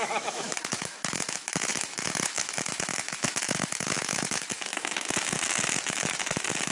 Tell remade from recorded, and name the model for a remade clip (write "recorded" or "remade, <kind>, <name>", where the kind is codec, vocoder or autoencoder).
remade, autoencoder, DAC-VAE